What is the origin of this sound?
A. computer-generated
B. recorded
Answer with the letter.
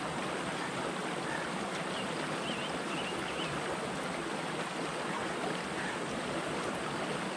B